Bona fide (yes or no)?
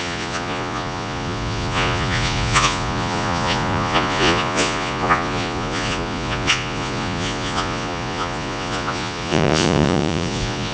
no